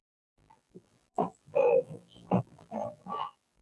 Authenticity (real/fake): fake